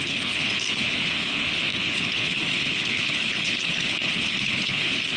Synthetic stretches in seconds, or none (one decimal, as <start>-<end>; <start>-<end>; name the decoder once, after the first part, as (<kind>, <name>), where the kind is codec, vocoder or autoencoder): 0.0-5.2 (codec, HILCodec)